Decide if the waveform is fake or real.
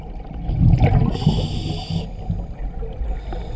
real